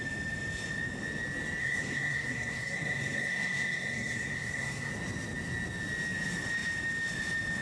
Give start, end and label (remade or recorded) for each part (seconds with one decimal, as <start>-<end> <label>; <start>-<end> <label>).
0.0-1.6 recorded; 1.6-4.9 remade; 4.9-7.6 recorded